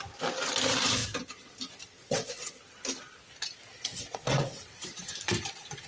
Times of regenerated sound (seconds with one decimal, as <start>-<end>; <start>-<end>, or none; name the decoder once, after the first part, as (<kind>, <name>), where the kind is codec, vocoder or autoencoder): 2.0-2.5 (vocoder, WaveNeXt); 3.9-5.1